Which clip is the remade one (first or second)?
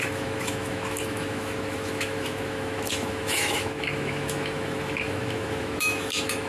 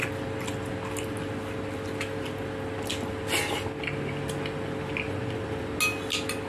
first